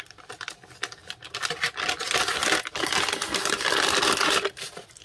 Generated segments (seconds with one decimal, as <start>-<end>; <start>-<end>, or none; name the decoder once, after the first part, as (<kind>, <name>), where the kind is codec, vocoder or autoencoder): none